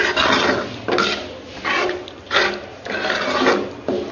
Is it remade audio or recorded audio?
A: recorded